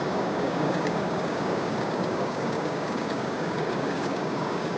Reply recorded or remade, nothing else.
remade